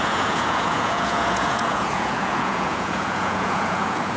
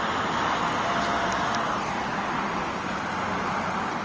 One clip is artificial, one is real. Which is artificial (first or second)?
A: first